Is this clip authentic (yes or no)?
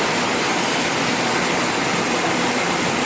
yes